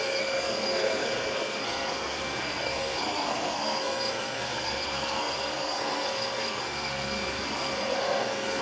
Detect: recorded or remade remade